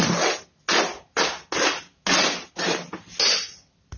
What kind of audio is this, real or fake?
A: real